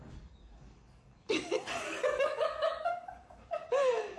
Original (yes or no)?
no